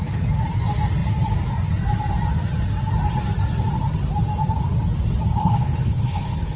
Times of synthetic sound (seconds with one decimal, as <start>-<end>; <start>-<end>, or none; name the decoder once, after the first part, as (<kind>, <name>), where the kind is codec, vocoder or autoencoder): 5.4-6.6 (codec, HILCodec)